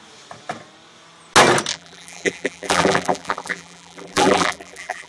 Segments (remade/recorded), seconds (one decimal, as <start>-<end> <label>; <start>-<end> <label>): 0.0-1.7 recorded; 1.7-5.1 remade